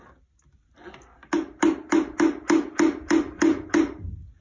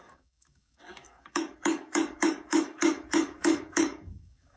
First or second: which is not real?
second